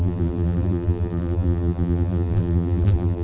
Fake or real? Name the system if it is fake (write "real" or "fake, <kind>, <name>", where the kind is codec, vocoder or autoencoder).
fake, vocoder, BigVGAN v2